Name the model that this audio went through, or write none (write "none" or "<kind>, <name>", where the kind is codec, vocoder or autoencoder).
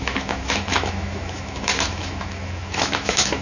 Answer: autoencoder, DAC-VAE